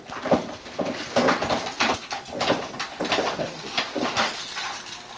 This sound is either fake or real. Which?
real